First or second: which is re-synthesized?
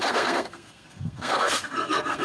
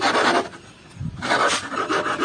first